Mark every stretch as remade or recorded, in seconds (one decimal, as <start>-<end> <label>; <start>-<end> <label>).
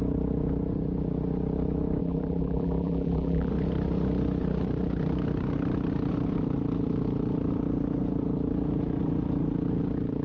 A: 0.0-2.0 recorded; 2.0-3.5 remade; 3.5-10.2 recorded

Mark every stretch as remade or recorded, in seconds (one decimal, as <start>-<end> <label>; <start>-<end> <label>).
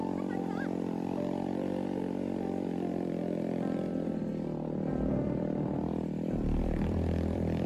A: 0.0-4.3 remade; 4.3-4.9 recorded; 4.9-7.7 remade